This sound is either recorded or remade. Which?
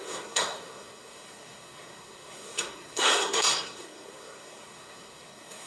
remade